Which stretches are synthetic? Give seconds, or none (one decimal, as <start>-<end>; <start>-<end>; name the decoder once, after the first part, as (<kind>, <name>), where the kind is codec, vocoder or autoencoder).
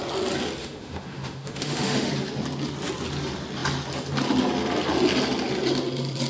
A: 0.6-2.1 (autoencoder, DAC-VAE)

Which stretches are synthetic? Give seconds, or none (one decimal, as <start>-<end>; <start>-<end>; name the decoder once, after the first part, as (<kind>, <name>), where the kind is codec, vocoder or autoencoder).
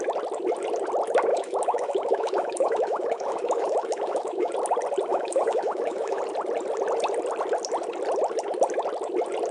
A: 1.3-4.5 (autoencoder, DAC-VAE); 5.1-6.2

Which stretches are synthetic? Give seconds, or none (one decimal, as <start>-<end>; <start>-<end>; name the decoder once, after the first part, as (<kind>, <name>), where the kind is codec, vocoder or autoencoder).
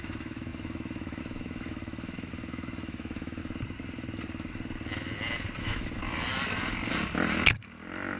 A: 0.0-3.4 (autoencoder, DAC-VAE); 5.6-6.0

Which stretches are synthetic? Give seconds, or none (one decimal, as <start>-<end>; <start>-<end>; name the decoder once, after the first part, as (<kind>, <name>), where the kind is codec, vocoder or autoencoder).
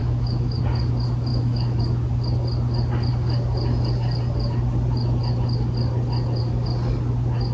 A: 0.0-0.6 (autoencoder, DAC-VAE); 1.3-1.8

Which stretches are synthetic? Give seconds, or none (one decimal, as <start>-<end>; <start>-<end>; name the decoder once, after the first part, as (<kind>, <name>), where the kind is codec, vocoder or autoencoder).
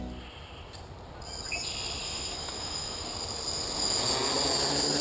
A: 2.0-3.0 (autoencoder, DAC-VAE)